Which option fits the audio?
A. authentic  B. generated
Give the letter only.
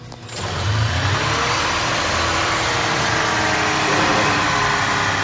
A